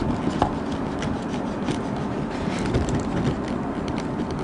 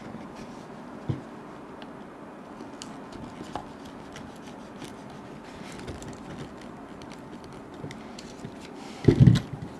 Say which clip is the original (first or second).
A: second